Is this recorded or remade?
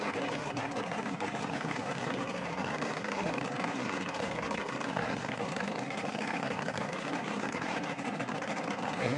remade